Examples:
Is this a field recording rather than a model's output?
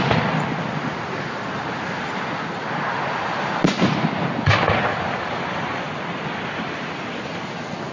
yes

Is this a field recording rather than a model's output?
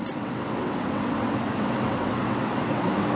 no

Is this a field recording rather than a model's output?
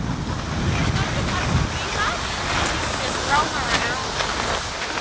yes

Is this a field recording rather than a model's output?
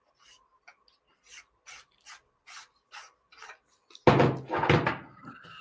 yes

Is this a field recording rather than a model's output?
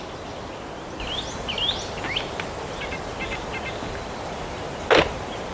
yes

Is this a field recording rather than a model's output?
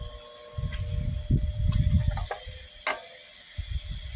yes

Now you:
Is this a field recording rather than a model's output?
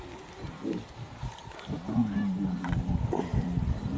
yes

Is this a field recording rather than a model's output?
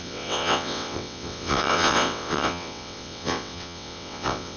no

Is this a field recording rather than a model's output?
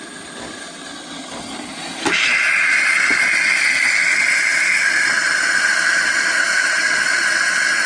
yes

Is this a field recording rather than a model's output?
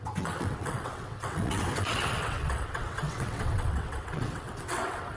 no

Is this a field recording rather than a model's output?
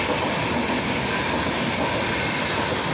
yes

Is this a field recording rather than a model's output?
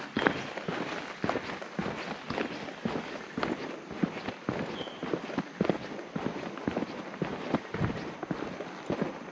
yes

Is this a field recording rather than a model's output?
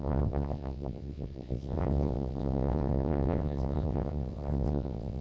no